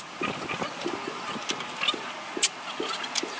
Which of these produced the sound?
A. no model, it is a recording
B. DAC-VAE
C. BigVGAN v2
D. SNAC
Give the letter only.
A